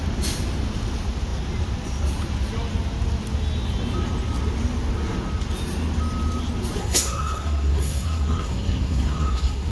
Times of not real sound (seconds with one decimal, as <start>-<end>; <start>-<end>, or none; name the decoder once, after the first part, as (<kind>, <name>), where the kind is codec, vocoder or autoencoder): 6.8-9.7 (codec, SNAC)